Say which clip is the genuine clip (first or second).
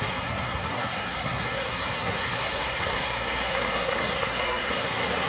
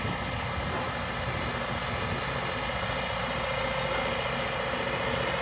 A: second